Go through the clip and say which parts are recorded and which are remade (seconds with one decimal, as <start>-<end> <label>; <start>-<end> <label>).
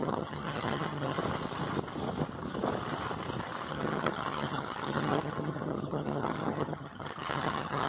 0.0-1.2 remade; 1.2-3.7 recorded; 3.7-7.9 remade